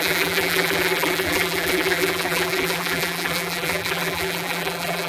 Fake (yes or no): yes